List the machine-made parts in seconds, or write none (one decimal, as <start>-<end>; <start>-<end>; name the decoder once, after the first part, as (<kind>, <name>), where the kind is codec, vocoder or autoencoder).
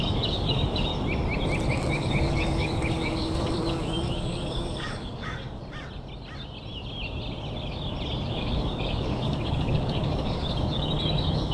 0.0-0.9 (codec, DAC); 1.7-5.6; 8.3-11.5